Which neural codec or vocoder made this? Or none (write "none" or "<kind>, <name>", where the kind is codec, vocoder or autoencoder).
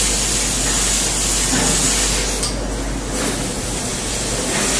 none